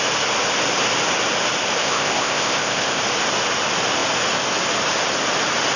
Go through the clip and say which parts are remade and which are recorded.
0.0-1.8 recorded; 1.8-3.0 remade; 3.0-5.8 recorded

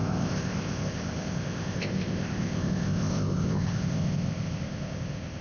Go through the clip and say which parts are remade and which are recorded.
0.0-5.4 remade

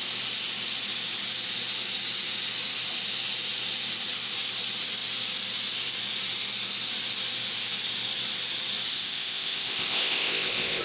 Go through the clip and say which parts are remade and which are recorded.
0.0-8.9 recorded; 8.9-10.8 remade